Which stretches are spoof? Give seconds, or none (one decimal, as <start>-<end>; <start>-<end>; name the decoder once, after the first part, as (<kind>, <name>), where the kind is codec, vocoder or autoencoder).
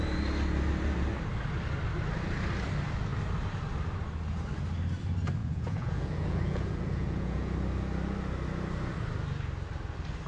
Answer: 5.4-7.5 (vocoder, Vocos)